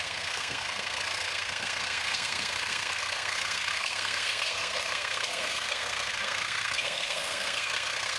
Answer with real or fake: fake